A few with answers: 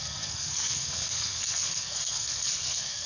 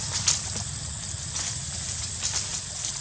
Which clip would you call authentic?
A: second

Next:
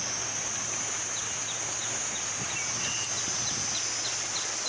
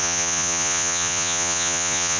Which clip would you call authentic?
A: first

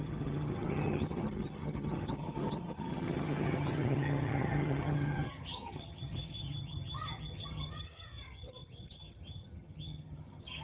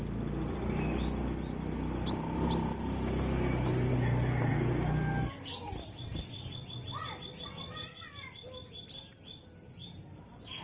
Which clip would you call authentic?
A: second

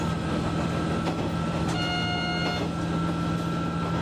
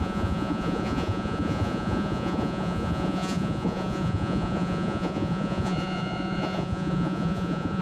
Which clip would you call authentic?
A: first